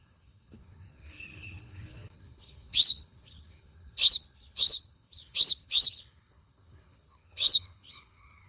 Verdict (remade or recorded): remade